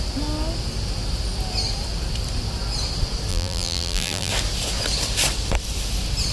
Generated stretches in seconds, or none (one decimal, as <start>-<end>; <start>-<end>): 3.3-4.3